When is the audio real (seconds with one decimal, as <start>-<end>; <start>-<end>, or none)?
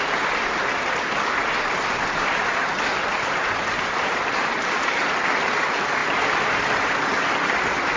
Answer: 0.0-6.0; 6.6-8.0